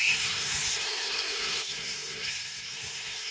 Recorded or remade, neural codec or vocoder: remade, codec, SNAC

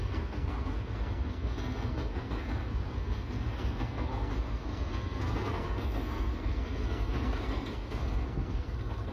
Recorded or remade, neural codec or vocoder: remade, codec, SNAC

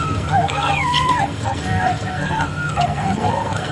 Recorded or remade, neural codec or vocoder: remade, codec, SNAC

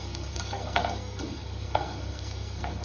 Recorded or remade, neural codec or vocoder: remade, codec, SNAC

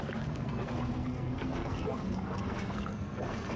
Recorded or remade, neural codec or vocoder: remade, codec, SNAC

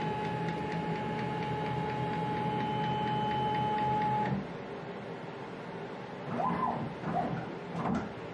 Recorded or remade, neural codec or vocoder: recorded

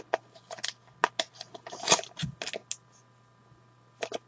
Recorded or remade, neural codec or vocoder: recorded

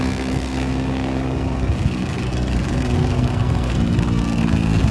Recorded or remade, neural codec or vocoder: remade, codec, SNAC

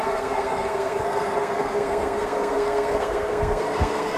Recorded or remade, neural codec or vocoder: remade, codec, SNAC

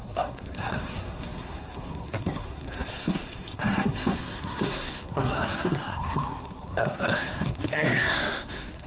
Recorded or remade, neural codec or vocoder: remade, codec, SNAC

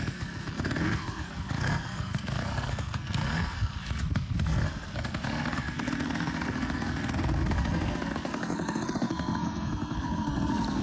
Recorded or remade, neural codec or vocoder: remade, codec, SNAC